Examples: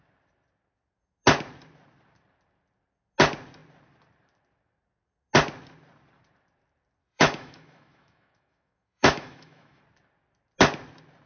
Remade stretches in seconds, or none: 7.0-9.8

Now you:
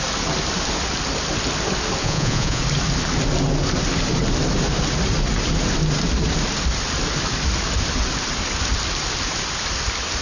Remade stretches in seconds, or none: 2.0-2.6